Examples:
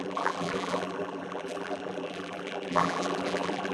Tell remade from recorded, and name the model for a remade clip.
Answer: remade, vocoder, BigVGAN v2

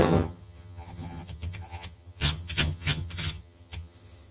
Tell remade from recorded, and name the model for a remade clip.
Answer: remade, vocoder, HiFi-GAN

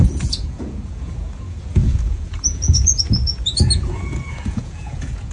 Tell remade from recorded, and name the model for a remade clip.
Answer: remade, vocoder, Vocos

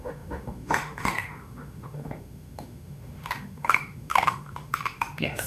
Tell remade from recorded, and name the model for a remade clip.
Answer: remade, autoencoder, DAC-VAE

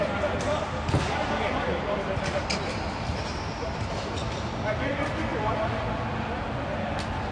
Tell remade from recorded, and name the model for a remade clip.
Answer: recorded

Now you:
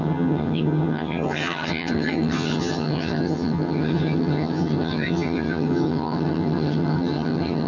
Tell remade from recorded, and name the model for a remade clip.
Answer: remade, vocoder, HiFi-GAN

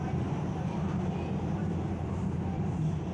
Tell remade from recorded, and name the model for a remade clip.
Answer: remade, vocoder, BigVGAN v2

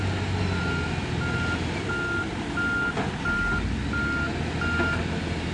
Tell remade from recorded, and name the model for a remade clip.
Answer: recorded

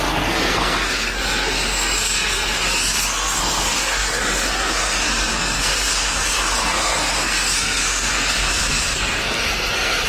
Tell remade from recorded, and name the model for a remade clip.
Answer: remade, codec, SNAC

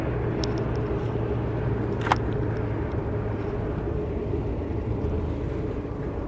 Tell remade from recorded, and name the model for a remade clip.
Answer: recorded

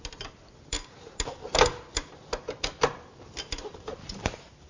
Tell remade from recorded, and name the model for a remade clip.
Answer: recorded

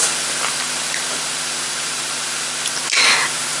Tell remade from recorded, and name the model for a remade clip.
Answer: recorded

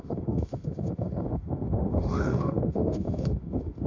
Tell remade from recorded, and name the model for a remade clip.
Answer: remade, autoencoder, DAC-VAE